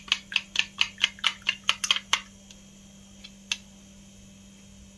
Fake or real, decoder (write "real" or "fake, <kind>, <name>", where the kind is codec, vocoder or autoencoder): real